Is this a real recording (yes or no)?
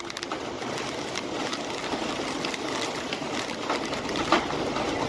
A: yes